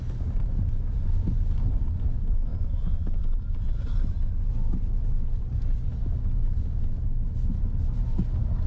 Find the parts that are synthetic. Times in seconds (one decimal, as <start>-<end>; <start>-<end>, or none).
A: none